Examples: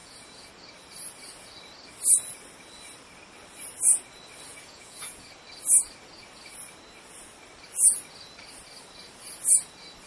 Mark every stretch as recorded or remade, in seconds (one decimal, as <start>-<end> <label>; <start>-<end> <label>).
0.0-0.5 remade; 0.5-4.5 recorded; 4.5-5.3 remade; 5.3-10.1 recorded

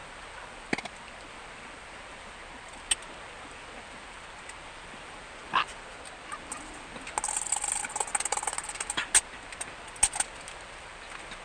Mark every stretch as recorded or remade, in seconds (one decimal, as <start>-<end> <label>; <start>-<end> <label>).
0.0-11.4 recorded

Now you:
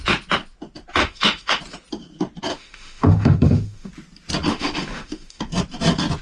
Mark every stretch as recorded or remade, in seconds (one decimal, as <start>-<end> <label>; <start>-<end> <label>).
0.0-1.0 recorded; 1.0-1.6 remade; 1.6-2.5 recorded; 2.5-3.9 remade; 3.9-4.5 recorded; 4.5-5.5 remade; 5.5-6.2 recorded